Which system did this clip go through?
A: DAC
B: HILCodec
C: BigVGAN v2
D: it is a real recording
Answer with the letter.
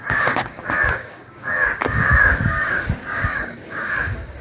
A